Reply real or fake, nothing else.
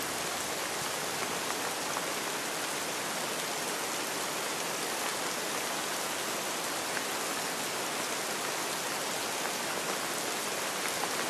real